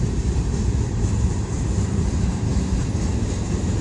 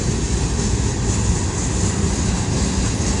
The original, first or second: second